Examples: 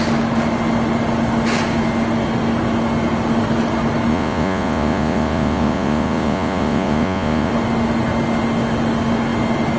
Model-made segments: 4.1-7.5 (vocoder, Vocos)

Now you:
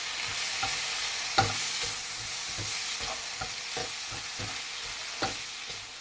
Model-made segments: none

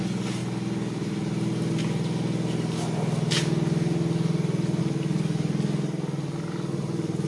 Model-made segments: none

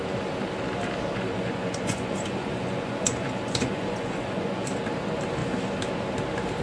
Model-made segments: 1.1-4.8 (vocoder, Vocos)

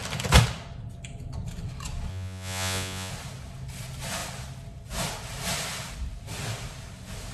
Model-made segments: 2.1-3.1 (vocoder, Vocos)

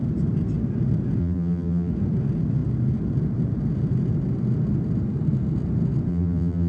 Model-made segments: 1.2-1.9 (vocoder, BigVGAN v2); 6.1-6.7

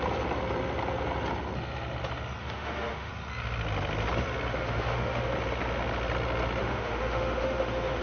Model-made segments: 2.4-3.1 (autoencoder, DAC-VAE); 4.5-5.3; 6.6-8.0